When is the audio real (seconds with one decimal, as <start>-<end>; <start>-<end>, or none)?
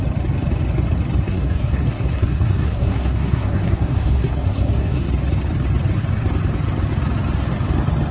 0.0-1.3; 5.1-8.1